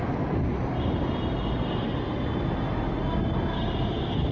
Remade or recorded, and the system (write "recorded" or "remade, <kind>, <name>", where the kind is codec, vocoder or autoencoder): recorded